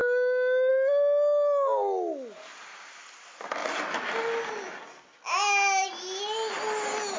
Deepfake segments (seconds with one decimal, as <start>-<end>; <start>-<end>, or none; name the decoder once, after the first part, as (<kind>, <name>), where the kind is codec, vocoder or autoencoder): none